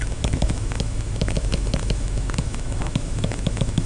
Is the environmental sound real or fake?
fake